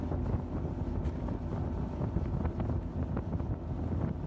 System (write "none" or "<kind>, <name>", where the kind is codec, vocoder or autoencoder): none